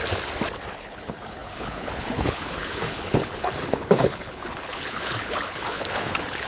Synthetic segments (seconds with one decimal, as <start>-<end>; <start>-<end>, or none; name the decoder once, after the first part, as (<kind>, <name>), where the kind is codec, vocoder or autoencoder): 0.7-6.5 (codec, HILCodec)